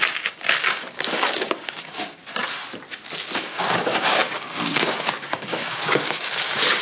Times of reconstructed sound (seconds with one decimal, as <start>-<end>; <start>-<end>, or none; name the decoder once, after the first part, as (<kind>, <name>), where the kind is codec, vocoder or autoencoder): 0.0-2.2 (codec, DAC); 3.4-6.8